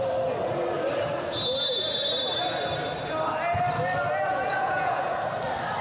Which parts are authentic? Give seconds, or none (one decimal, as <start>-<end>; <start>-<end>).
0.0-4.3; 5.2-5.8